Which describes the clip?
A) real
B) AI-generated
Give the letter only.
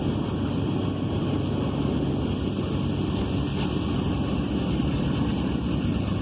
A